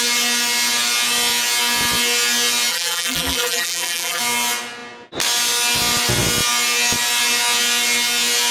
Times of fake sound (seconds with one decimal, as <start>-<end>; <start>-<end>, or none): 2.7-4.2